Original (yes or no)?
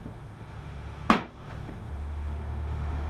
no